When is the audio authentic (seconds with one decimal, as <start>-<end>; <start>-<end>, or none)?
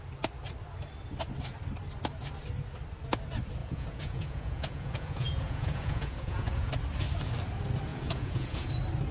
0.0-3.6; 6.7-7.9; 8.7-9.1